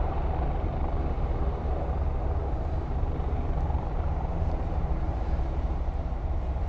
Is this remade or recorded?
remade